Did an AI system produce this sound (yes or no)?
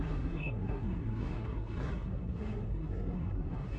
yes